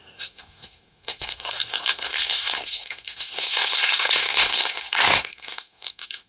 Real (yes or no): no